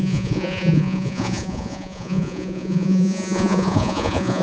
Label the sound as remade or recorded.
remade